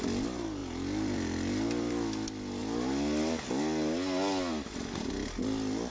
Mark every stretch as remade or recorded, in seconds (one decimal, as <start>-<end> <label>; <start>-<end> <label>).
0.0-0.6 recorded; 0.6-1.9 remade; 1.9-5.9 recorded